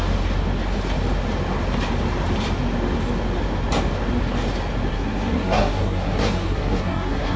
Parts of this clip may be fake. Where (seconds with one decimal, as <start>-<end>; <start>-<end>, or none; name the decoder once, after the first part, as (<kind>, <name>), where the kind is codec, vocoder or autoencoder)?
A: 4.9-7.4 (codec, SNAC)